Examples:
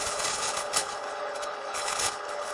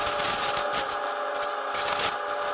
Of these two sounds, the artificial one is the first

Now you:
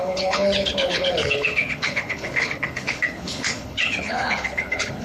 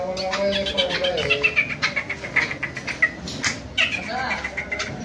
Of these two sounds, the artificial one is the first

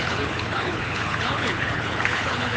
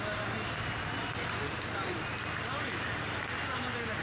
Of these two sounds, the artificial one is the first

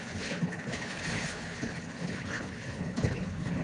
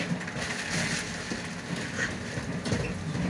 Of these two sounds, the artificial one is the first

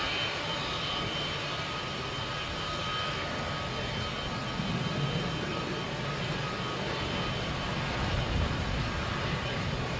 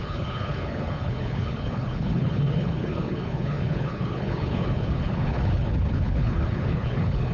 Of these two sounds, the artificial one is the second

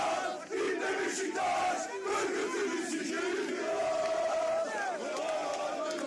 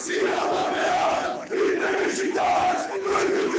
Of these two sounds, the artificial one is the second